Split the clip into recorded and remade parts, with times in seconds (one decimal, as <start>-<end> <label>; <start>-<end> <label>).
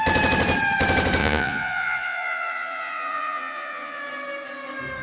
0.0-1.2 recorded; 1.2-4.0 remade; 4.0-5.0 recorded